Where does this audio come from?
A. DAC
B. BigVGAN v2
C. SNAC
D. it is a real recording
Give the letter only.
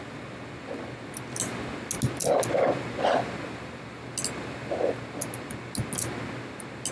D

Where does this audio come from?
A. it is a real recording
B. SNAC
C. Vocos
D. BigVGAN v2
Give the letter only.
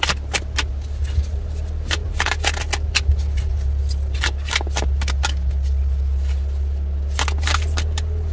A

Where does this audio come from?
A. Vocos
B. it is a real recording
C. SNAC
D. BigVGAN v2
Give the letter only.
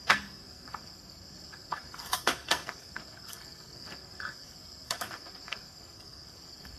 C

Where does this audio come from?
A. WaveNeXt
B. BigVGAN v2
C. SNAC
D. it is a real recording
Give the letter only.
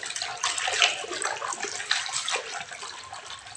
D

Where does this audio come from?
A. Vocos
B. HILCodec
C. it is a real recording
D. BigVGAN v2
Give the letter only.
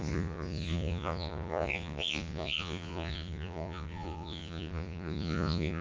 A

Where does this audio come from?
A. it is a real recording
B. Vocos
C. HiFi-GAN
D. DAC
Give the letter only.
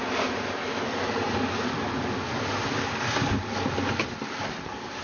A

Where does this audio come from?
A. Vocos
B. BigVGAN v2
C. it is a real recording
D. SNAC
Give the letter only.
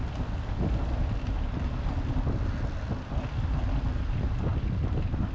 C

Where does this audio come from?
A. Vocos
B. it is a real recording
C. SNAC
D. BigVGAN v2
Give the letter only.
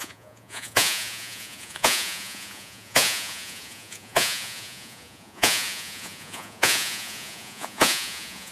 A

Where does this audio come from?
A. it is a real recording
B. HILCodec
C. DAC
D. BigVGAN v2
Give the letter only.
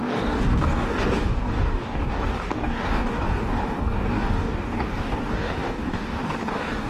C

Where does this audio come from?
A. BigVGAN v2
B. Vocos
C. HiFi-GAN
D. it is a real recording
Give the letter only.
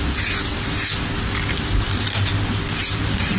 D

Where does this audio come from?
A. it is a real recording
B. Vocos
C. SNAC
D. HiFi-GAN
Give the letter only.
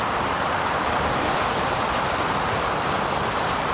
A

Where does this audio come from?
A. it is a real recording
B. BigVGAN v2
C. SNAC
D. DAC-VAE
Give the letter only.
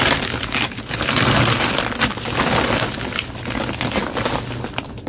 A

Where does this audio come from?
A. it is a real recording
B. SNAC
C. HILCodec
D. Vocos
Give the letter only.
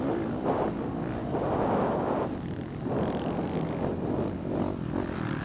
A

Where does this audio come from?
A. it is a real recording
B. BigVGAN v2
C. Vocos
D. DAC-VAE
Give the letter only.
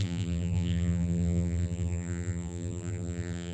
B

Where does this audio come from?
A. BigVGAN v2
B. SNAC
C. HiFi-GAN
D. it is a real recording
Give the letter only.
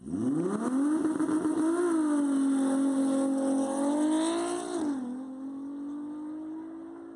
D